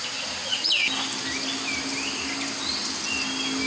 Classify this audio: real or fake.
real